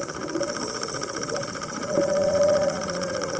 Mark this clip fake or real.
fake